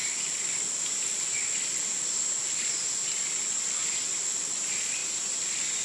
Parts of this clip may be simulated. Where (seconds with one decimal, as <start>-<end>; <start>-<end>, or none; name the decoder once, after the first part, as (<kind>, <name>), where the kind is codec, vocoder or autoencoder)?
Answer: 0.0-2.7 (vocoder, BigVGAN v2)